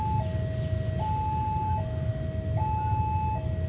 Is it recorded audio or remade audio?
recorded